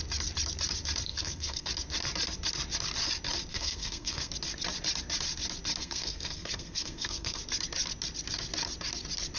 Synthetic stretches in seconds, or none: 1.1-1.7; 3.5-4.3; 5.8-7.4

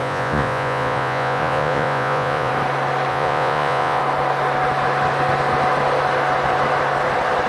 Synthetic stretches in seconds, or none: 0.0-2.5; 3.1-4.0

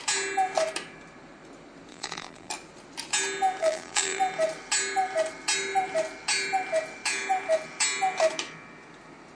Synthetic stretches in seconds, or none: 1.9-2.5; 3.6-4.2